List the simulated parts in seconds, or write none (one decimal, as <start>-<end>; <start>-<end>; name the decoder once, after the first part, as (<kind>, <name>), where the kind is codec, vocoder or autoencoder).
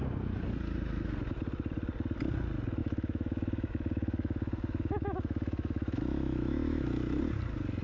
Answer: 2.8-7.2 (autoencoder, DAC-VAE)